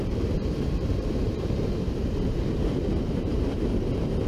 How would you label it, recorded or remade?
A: remade